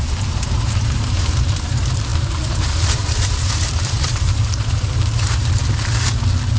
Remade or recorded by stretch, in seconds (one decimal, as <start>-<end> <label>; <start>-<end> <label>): 0.0-5.6 remade; 5.6-6.6 recorded